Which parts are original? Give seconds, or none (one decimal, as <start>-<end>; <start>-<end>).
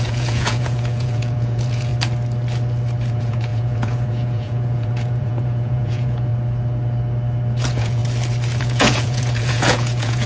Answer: 1.9-3.1; 6.3-7.6; 8.0-8.6